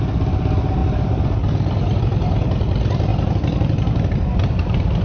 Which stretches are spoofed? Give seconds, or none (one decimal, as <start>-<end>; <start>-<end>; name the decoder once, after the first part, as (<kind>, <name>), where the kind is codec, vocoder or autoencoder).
3.1-4.1 (vocoder, BigVGAN v2)